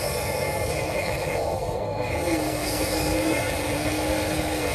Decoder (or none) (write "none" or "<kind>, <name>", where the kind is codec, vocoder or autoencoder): codec, SNAC